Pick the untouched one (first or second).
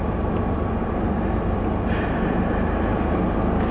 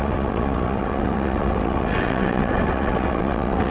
first